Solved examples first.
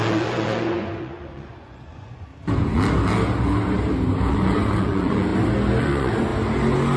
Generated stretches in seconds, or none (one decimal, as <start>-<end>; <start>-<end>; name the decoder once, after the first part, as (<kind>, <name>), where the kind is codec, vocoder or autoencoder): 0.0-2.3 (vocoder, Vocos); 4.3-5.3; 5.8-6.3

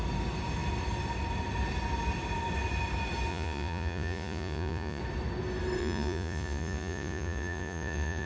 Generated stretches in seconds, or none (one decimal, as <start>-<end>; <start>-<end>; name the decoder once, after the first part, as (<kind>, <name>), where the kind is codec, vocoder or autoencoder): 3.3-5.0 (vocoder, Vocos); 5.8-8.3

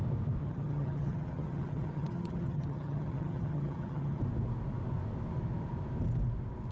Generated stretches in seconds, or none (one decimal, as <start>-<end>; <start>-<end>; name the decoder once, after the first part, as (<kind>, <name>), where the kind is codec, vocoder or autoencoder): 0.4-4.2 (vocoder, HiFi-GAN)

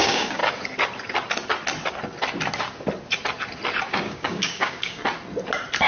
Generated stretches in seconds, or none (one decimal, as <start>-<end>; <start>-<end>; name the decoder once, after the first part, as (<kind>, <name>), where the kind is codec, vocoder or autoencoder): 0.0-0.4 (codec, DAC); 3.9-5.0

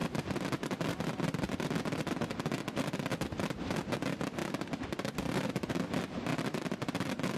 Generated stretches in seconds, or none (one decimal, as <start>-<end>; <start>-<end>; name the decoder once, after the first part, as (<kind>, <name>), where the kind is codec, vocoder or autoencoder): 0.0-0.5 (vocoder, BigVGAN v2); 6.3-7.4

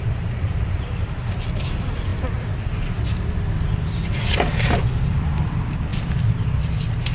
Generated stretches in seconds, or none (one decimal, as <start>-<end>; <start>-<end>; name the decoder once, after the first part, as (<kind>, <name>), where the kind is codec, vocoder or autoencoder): 0.0-2.1 (vocoder, BigVGAN v2); 4.3-7.1

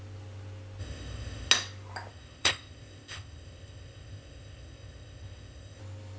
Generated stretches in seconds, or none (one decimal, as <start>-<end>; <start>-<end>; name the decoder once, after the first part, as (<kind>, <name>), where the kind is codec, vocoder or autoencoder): 0.8-1.5 (codec, ZipCodec); 2.1-5.8